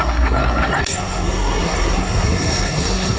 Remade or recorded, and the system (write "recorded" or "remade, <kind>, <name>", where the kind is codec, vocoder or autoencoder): remade, codec, SNAC